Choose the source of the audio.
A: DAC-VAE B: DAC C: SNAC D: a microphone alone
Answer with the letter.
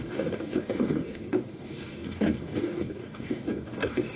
B